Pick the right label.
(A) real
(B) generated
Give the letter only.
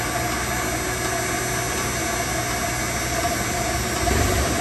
A